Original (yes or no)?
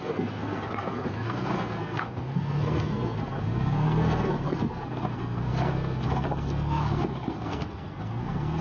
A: no